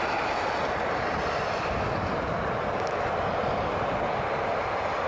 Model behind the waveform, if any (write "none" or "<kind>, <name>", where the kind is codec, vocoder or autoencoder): none